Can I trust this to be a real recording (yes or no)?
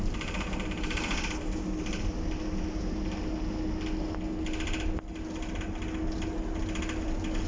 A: yes